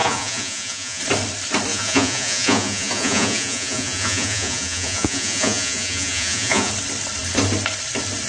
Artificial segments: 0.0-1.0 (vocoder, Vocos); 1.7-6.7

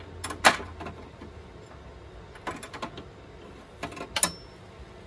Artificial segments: none

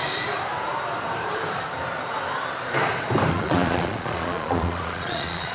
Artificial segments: 3.3-5.5 (vocoder, Vocos)